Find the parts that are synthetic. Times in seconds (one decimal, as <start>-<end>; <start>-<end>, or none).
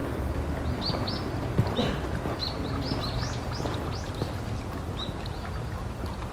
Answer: none